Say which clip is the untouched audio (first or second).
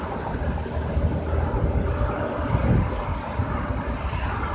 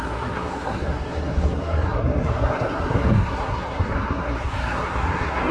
first